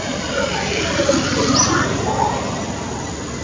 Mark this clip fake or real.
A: real